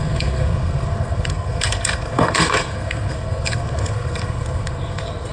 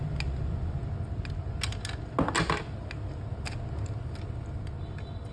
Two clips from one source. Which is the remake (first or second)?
first